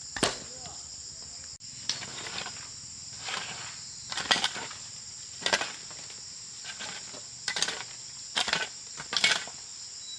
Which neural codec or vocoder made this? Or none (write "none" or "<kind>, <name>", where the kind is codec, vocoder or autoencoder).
none